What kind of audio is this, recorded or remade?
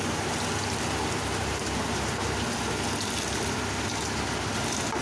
recorded